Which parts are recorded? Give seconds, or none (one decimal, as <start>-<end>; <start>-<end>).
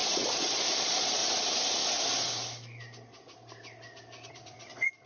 1.2-4.3